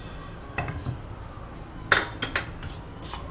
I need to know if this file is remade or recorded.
recorded